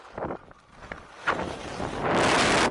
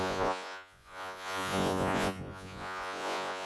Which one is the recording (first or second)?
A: first